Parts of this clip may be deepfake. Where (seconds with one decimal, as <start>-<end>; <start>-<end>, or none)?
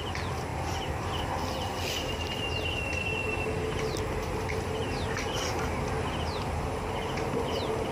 0.5-1.2; 1.7-2.8; 4.8-5.7